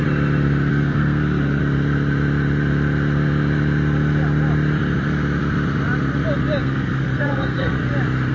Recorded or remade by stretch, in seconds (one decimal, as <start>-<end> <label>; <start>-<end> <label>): 0.0-0.7 recorded; 0.7-1.6 remade; 1.6-6.6 recorded; 6.6-7.8 remade; 7.8-8.3 recorded